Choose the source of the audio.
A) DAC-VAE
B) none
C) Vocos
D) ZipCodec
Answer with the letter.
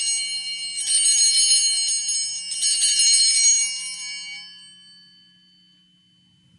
B